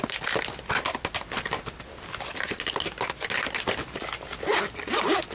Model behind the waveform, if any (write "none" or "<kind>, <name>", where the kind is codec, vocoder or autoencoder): none